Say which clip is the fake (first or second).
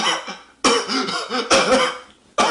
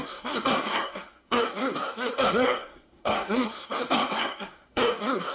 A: second